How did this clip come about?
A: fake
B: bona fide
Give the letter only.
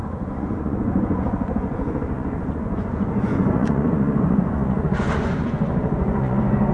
A